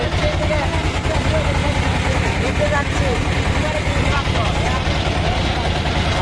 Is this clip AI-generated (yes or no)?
no